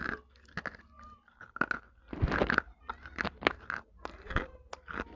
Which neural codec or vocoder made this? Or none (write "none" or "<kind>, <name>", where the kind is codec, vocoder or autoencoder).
none